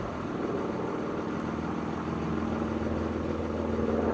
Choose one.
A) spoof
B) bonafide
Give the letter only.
B